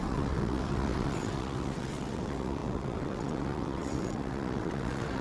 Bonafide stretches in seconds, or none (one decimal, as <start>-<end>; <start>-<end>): none